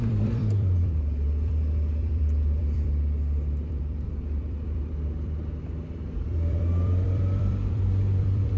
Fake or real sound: fake